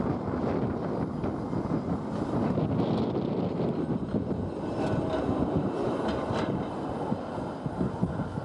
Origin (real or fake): real